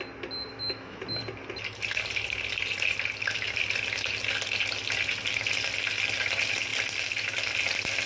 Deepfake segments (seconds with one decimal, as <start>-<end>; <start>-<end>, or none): 0.5-1.0